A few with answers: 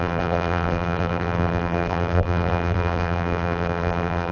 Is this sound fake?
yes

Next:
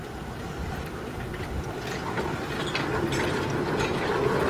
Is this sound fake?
no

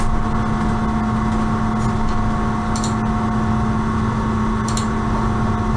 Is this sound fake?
no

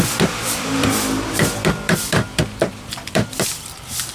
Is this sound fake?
yes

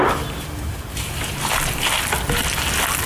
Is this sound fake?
no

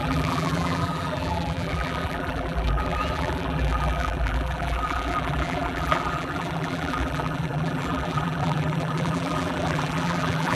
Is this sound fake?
yes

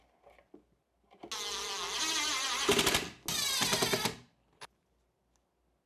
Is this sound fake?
no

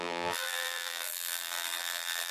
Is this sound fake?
yes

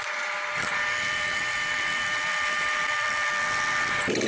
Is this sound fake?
yes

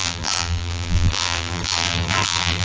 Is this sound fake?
yes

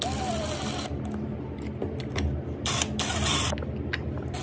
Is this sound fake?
no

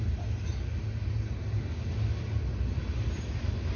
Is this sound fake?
no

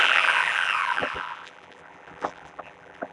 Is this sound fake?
yes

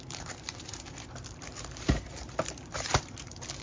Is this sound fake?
yes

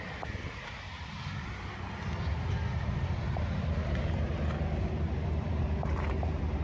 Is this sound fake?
no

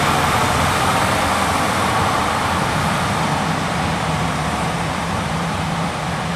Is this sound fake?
yes